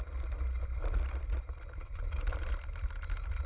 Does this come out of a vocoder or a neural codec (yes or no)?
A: no